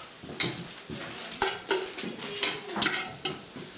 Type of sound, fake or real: real